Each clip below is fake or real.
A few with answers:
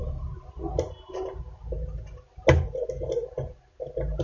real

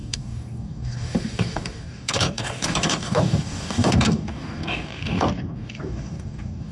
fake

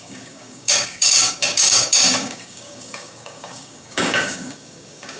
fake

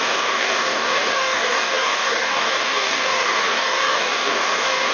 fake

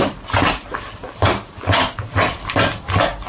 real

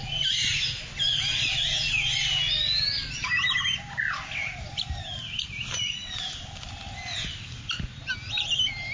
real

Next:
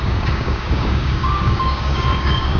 fake